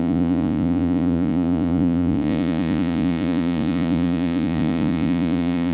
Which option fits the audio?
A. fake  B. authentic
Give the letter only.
A